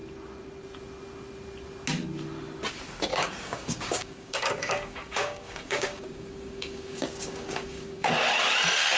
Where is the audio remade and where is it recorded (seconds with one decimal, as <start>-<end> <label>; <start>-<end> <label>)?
0.0-3.1 recorded; 3.1-8.1 remade; 8.1-9.0 recorded